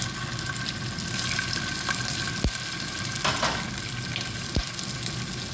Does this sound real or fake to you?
real